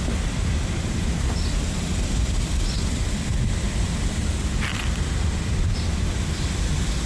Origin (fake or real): fake